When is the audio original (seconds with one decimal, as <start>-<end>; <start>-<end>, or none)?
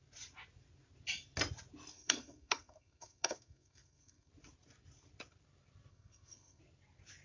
0.0-1.9; 4.3-5.9; 6.6-7.2